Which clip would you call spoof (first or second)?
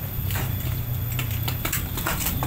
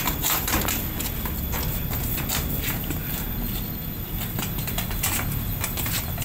first